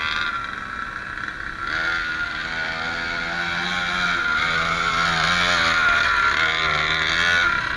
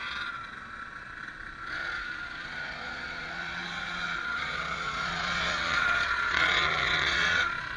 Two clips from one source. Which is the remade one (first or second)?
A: second